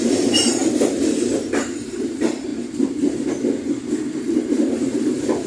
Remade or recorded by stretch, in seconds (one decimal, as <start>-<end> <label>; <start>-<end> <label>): 0.0-0.6 remade; 0.6-1.4 recorded; 1.4-2.5 remade; 2.5-4.2 recorded; 4.2-5.5 remade